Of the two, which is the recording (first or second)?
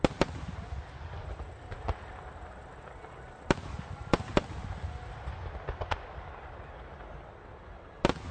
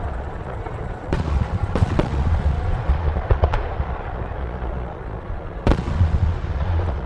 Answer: first